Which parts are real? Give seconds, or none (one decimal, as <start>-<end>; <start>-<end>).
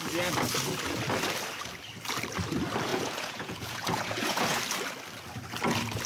0.0-2.9; 4.6-6.1